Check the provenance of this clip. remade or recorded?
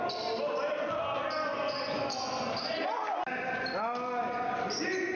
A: recorded